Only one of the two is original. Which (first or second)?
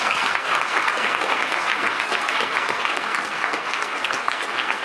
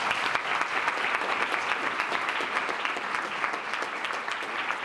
second